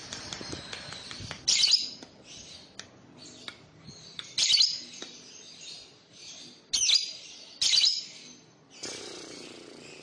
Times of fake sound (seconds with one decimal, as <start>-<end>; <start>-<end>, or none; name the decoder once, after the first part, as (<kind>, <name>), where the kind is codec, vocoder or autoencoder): none